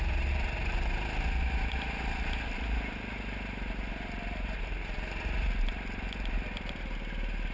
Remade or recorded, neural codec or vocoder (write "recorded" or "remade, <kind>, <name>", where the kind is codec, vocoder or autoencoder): recorded